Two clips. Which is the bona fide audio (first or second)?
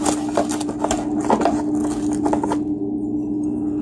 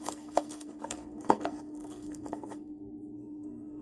first